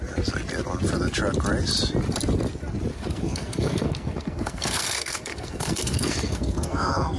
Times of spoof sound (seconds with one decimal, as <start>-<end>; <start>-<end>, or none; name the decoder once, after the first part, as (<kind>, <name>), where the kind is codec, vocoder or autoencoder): 2.9-7.2 (codec, SNAC)